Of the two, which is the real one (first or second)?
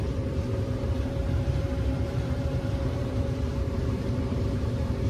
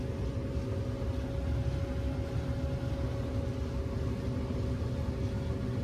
second